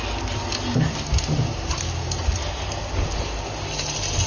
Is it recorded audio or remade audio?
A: recorded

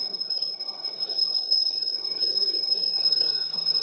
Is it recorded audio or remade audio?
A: remade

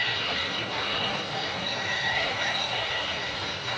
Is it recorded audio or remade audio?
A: remade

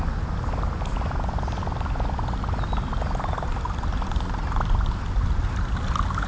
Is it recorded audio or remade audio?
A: recorded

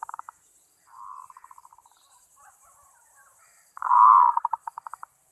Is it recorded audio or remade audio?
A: remade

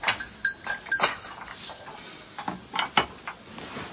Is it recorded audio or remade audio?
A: recorded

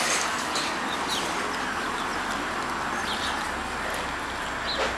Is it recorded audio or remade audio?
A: recorded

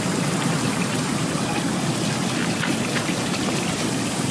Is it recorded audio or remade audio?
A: recorded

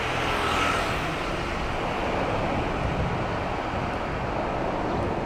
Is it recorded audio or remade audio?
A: recorded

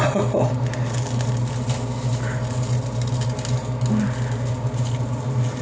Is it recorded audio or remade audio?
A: recorded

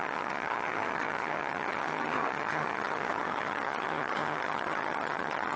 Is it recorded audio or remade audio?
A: remade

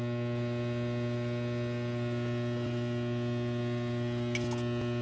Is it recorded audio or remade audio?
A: recorded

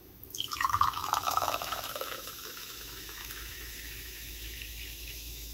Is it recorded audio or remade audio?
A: remade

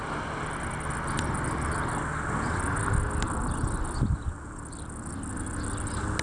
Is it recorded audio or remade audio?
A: recorded